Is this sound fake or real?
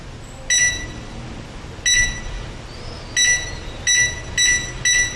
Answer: real